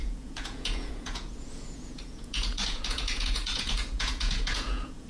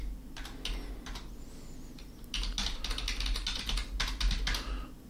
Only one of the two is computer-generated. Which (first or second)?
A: first